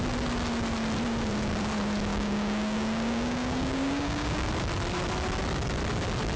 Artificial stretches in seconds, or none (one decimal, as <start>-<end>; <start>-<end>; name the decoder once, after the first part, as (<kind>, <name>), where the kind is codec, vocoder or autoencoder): 2.1-4.5 (codec, DAC)